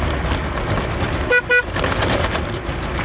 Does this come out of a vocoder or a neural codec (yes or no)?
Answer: no